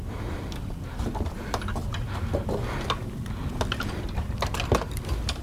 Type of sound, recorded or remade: recorded